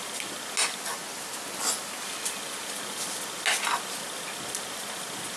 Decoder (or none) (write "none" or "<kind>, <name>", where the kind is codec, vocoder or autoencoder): none